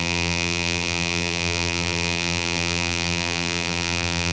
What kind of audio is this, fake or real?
fake